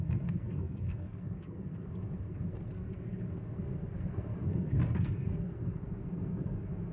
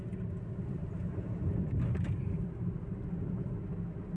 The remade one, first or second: first